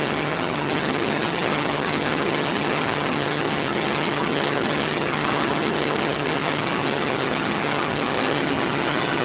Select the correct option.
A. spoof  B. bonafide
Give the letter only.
A